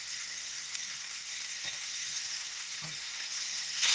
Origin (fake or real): fake